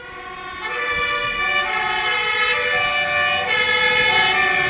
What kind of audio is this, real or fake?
real